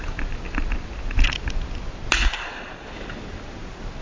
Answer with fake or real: real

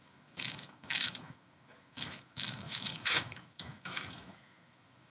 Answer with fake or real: fake